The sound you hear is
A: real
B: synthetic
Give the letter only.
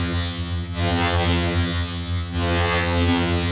B